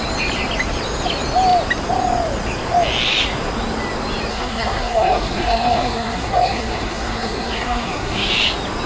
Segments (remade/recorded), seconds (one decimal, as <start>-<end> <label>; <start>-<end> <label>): 0.0-4.3 recorded; 4.3-8.3 remade; 8.3-8.9 recorded